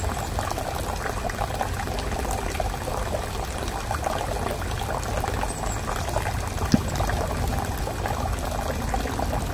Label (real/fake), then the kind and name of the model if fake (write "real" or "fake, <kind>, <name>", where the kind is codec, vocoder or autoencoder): real